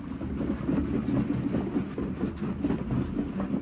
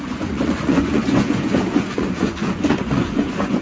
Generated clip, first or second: second